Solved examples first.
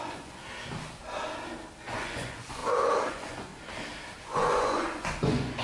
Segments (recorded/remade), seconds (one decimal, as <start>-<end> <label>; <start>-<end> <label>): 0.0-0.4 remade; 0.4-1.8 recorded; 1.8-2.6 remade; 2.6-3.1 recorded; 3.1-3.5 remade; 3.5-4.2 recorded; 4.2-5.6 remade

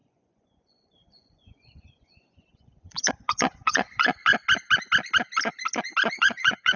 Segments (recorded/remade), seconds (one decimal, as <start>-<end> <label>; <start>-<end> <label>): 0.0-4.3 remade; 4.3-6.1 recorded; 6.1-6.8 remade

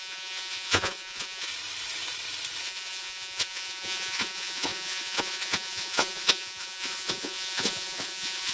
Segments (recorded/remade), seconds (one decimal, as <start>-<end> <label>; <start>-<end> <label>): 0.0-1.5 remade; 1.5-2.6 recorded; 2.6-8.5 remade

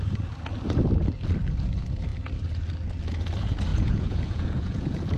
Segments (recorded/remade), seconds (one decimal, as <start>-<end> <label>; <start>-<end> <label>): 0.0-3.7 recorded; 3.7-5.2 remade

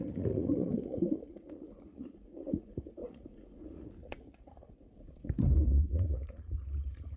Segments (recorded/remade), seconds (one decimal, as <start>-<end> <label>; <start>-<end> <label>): 0.0-7.2 remade